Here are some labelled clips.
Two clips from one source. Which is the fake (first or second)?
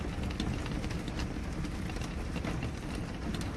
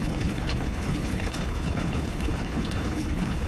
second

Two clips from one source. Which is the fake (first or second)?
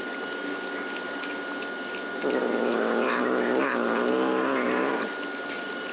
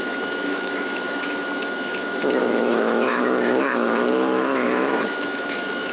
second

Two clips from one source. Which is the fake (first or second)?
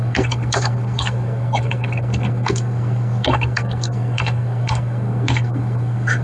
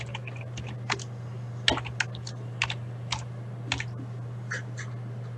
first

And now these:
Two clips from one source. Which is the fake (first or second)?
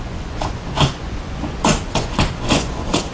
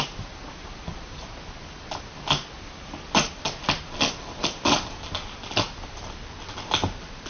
first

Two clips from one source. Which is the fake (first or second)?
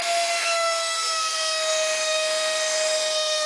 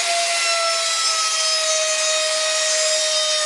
first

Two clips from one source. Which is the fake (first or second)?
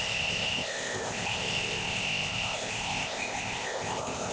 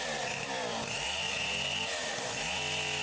first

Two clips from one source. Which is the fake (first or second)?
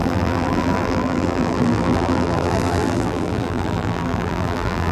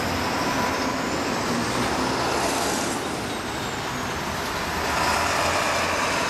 first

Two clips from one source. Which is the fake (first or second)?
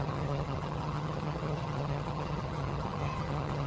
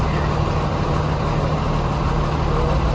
first